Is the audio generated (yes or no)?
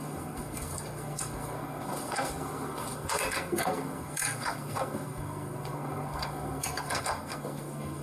yes